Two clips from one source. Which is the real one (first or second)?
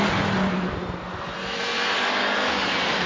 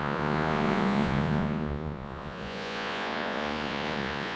first